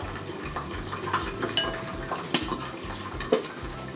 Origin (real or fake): real